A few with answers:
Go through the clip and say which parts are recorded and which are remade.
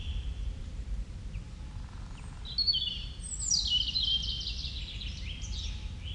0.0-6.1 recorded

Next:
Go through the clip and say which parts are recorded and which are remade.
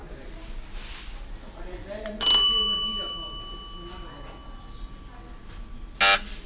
0.0-6.5 recorded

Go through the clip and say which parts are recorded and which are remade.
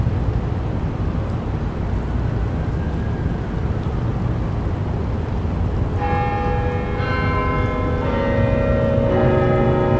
0.0-10.0 recorded